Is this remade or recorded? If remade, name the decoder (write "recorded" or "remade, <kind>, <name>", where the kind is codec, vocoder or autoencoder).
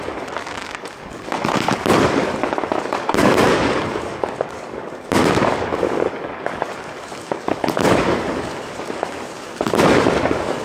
remade, codec, DAC